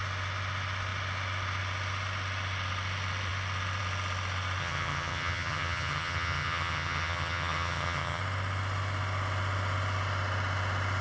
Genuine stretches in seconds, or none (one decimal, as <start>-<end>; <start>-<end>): 0.0-4.6; 8.2-11.0